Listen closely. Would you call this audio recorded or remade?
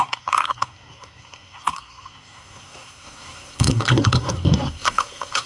remade